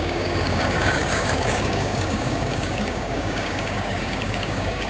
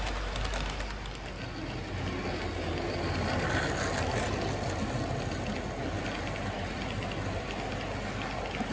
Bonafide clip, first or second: second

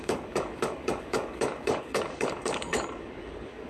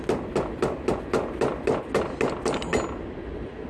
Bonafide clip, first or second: second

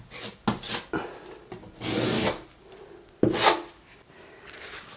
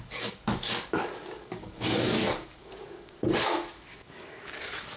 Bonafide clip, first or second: first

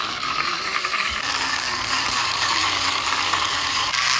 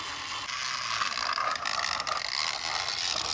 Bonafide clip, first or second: second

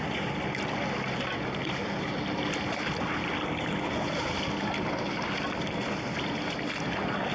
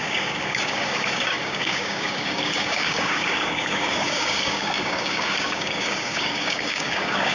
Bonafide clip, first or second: first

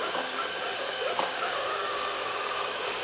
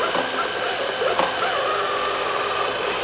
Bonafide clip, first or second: second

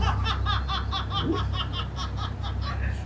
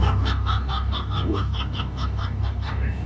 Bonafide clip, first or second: first